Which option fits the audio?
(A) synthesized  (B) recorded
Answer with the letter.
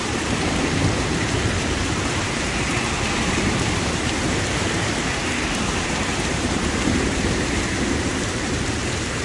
A